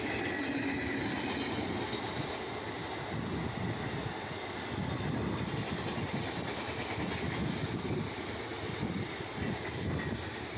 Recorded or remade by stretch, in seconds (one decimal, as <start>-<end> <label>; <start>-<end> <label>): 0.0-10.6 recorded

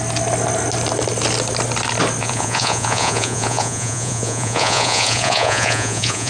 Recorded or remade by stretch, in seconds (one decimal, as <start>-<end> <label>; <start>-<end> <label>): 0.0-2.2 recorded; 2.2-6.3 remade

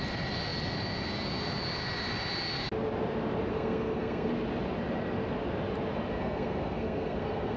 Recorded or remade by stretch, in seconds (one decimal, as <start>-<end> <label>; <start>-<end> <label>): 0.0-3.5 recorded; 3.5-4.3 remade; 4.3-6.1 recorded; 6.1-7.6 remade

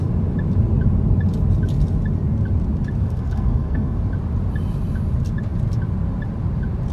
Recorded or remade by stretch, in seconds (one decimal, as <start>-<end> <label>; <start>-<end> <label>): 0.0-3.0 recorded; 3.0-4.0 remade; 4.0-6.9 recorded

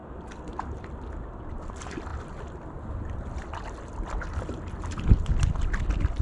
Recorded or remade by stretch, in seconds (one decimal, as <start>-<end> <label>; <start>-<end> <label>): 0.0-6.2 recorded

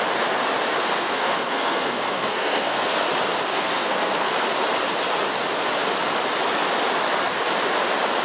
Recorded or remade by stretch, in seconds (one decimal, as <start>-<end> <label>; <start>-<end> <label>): 0.0-0.8 recorded; 0.8-3.1 remade; 3.1-3.5 recorded; 3.5-4.3 remade; 4.3-8.2 recorded

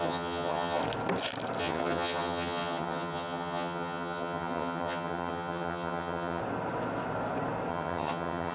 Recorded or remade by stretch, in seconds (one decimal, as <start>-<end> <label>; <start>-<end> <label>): 0.0-0.8 remade; 0.8-1.6 recorded; 1.6-6.4 remade; 6.4-7.7 recorded; 7.7-8.5 remade